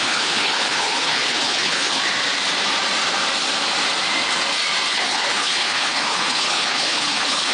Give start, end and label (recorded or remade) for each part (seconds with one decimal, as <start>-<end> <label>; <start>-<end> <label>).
0.0-2.0 remade; 2.0-4.9 recorded; 4.9-7.5 remade